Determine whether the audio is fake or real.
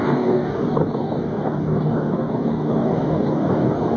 fake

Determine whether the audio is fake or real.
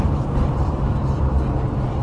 fake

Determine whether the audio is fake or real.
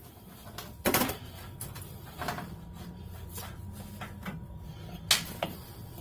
real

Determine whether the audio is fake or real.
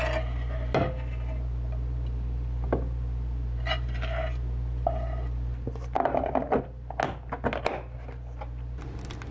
real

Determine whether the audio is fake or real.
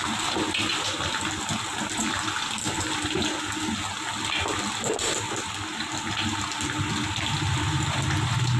real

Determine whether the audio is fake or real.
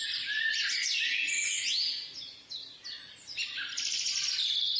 real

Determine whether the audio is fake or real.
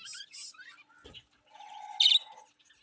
real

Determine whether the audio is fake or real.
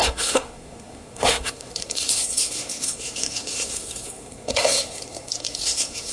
fake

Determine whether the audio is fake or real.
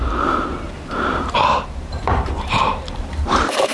fake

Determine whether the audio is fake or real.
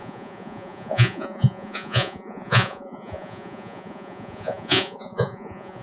fake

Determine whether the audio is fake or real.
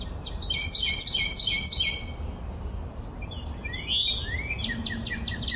real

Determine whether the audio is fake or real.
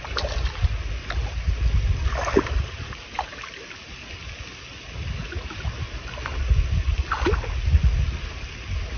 real